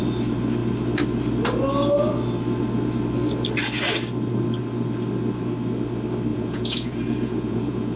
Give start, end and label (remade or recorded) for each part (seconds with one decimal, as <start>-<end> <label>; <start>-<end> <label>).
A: 0.0-6.3 recorded; 6.3-8.0 remade